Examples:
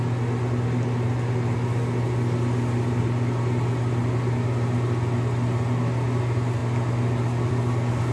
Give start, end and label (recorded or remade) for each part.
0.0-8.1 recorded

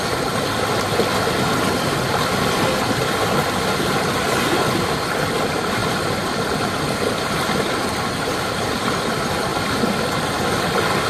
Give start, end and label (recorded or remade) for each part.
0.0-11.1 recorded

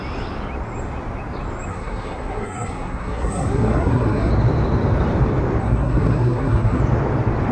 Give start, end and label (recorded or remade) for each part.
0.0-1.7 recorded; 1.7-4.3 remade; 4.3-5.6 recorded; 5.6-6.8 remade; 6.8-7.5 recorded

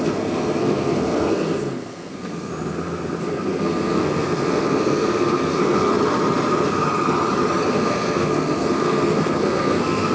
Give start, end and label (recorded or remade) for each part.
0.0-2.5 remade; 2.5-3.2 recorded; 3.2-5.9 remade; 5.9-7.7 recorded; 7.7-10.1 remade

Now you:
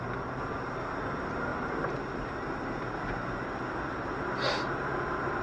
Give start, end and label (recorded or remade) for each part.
0.0-5.4 recorded

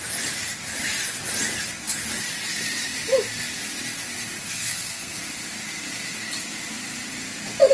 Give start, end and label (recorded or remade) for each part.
0.0-4.5 recorded; 4.5-5.1 remade; 5.1-7.7 recorded

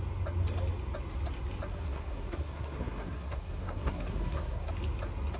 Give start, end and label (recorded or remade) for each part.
0.0-1.7 recorded; 1.7-4.7 remade; 4.7-5.4 recorded

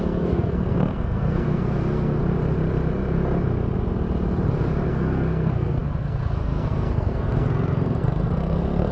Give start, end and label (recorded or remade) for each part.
0.0-2.2 remade; 2.2-4.9 recorded; 4.9-8.9 remade